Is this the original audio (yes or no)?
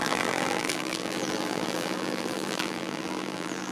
no